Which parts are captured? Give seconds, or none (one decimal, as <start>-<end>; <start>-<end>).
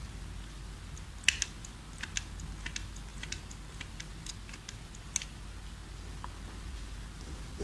0.0-3.1; 4.3-7.6